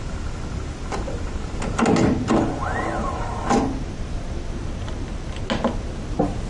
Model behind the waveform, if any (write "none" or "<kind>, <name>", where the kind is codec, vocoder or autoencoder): none